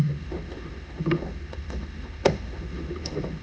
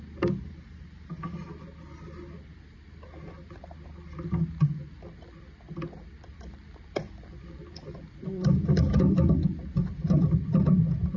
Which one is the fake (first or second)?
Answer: first